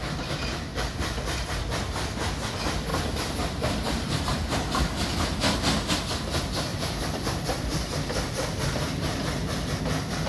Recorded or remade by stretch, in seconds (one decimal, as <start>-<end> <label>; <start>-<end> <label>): 0.0-0.7 recorded; 0.7-1.6 remade; 1.6-2.9 recorded; 2.9-4.2 remade; 4.2-6.7 recorded; 6.7-9.8 remade; 9.8-10.3 recorded